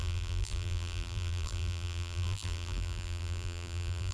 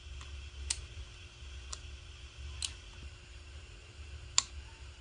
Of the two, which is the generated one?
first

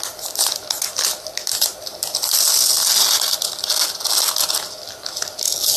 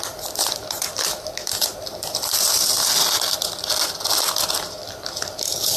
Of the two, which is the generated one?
second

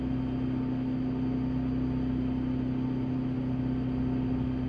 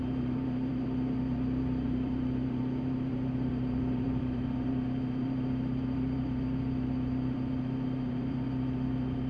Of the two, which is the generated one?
second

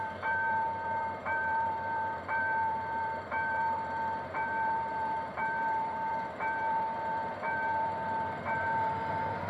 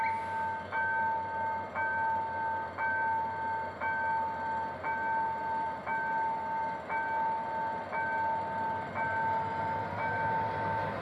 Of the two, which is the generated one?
first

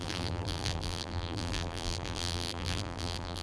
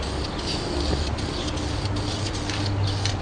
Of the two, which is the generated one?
first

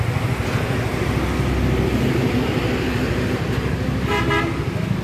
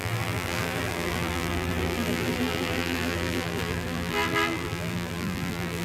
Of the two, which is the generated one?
second